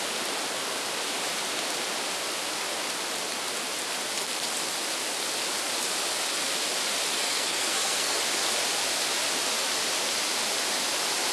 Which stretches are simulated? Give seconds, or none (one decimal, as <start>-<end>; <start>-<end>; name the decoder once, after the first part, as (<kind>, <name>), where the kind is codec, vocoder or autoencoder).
7.1-8.2 (codec, SNAC)